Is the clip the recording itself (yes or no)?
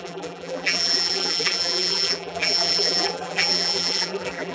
no